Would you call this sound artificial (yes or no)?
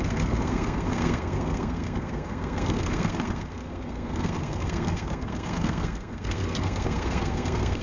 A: yes